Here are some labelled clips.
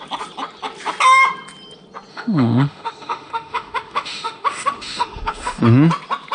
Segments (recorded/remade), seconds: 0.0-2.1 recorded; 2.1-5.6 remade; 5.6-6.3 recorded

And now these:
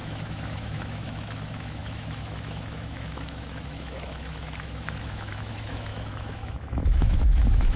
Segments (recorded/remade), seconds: 0.0-7.8 remade